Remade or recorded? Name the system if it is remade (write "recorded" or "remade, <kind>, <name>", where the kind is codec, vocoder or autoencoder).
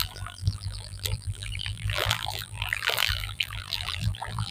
remade, vocoder, BigVGAN v2